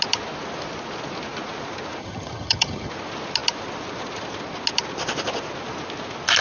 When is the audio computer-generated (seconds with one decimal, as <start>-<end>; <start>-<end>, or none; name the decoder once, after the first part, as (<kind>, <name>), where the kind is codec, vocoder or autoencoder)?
2.0-2.9 (vocoder, HiFi-GAN)